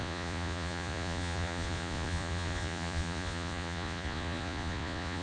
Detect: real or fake fake